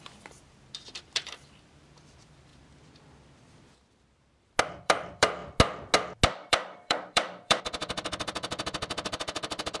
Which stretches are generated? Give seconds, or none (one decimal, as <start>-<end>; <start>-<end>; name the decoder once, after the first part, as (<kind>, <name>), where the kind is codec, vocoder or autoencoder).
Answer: 0.0-2.5 (vocoder, BigVGAN v2); 4.6-5.4; 6.5-9.8